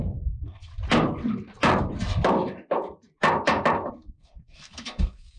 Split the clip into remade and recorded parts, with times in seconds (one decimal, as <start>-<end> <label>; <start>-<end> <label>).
0.0-0.7 remade; 0.7-3.9 recorded; 3.9-5.4 remade